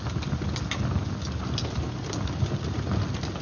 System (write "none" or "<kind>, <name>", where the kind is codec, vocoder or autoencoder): none